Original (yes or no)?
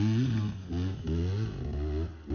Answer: yes